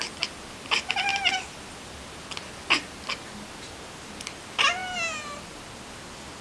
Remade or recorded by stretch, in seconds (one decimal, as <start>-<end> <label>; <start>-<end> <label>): 0.0-1.1 recorded; 1.1-2.3 remade; 2.3-6.4 recorded